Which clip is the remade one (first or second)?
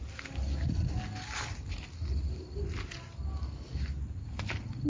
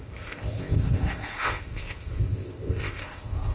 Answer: second